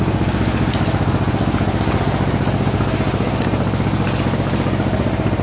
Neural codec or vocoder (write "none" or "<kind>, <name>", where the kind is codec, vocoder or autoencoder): none